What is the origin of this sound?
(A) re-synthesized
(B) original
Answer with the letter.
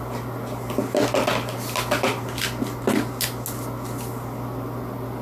B